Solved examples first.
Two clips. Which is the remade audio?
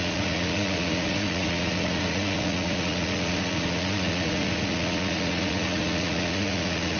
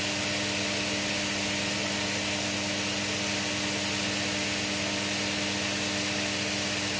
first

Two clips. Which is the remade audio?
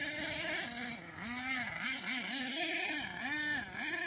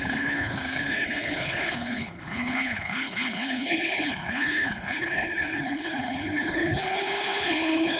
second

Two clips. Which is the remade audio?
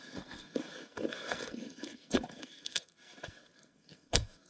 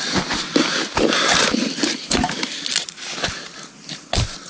first